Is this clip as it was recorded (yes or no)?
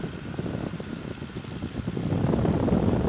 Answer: yes